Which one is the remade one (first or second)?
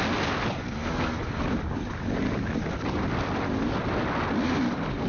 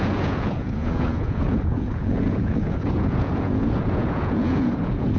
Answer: second